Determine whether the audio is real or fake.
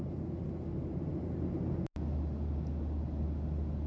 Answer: real